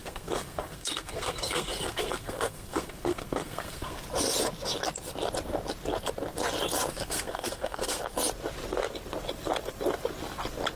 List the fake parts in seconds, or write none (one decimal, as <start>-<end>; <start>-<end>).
0.0-4.0; 6.9-8.0